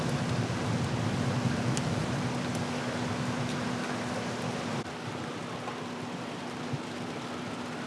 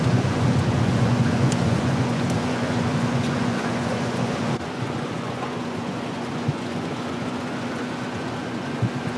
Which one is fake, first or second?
second